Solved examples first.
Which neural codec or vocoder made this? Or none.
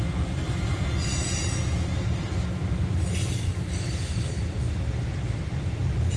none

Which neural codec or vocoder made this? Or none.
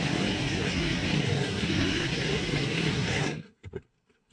codec, SNAC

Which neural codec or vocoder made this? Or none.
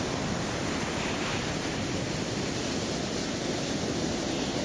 none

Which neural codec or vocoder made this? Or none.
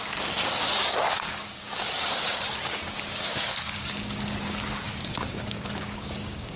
codec, DAC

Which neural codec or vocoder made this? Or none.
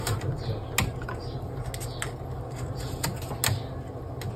none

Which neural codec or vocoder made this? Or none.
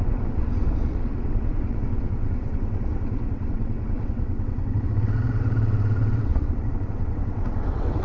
vocoder, WaveNeXt